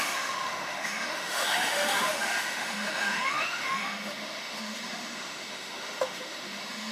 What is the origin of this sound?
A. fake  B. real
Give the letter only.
A